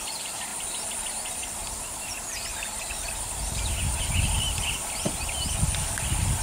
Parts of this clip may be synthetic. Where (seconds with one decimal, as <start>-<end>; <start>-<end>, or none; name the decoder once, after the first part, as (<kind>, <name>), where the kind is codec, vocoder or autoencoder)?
0.0-6.4 (vocoder, BigVGAN v2)